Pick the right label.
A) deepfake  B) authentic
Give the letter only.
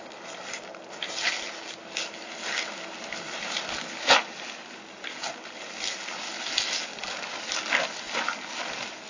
B